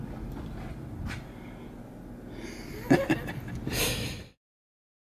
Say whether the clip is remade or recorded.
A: recorded